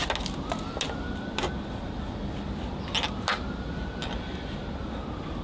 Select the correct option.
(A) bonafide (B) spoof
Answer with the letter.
A